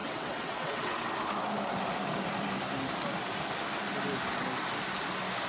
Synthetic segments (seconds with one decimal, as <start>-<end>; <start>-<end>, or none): 0.0-1.1